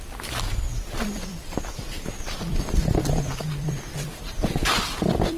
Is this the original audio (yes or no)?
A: no